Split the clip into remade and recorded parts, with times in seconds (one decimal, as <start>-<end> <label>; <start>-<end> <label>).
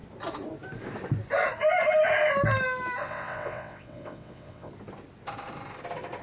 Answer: 0.0-3.0 recorded; 3.0-4.7 remade; 4.7-6.2 recorded